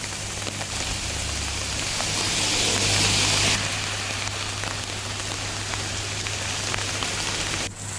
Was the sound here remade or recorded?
recorded